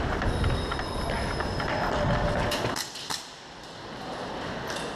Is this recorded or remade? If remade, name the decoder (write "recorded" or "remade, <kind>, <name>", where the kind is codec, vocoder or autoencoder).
recorded